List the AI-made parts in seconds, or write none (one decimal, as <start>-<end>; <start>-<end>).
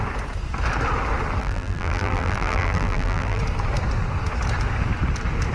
1.4-3.4